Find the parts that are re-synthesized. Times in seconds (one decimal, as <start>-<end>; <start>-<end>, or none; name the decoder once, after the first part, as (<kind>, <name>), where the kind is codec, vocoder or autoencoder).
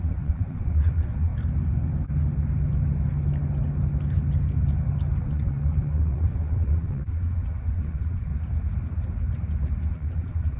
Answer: 0.0-1.3 (vocoder, WaveNeXt); 5.2-8.3; 9.9-10.6